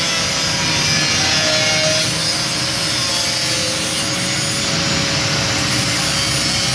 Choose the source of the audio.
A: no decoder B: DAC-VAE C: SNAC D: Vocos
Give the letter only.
A